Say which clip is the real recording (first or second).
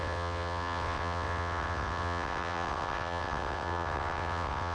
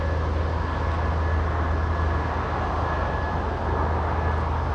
second